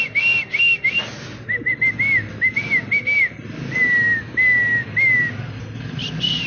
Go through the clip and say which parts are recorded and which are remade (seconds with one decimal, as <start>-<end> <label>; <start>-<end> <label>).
0.0-6.5 recorded